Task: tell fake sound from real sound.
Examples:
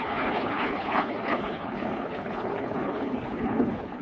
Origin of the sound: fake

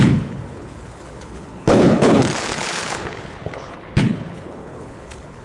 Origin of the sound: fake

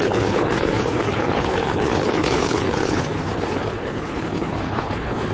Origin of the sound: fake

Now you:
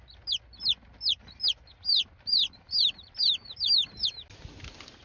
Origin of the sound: real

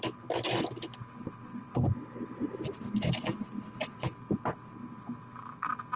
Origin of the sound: real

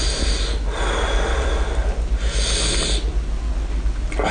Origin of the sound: real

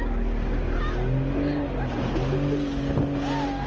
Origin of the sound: real